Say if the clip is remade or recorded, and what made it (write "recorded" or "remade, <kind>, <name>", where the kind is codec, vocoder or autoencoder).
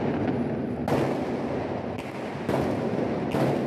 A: recorded